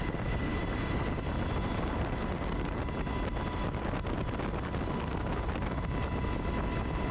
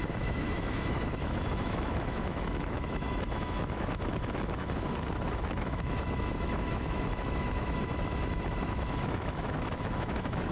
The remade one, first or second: second